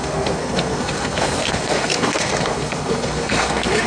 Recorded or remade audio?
remade